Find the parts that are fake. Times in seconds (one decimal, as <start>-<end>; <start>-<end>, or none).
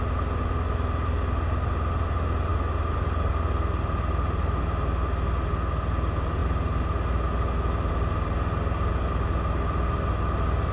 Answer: none